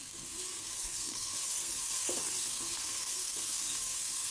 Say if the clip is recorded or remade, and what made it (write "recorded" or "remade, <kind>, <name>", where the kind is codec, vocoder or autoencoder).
remade, codec, SNAC